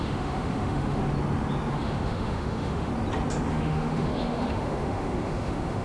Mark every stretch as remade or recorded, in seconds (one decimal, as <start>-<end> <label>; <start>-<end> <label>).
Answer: 0.0-1.0 remade; 1.0-1.7 recorded; 1.7-2.9 remade; 2.9-3.5 recorded; 3.5-5.8 remade